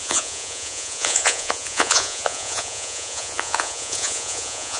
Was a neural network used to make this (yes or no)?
yes